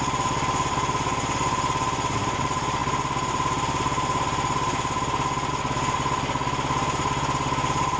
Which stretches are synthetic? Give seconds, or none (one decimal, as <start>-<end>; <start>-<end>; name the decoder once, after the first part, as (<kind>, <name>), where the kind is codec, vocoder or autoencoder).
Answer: none